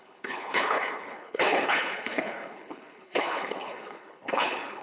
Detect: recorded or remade remade